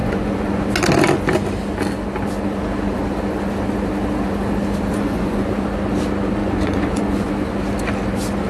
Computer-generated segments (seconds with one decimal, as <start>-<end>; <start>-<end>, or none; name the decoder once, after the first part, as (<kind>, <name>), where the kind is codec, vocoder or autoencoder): 0.0-0.6 (vocoder, Vocos); 4.9-5.5; 6.4-7.3